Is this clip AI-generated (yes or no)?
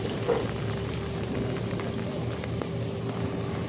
no